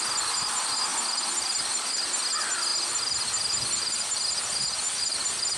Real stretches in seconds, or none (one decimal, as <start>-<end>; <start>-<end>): 0.0-5.6